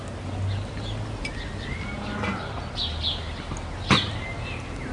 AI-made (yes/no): no